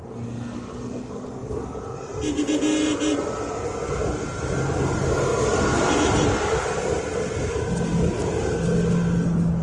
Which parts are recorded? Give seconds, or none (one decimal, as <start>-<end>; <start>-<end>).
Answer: 0.0-9.6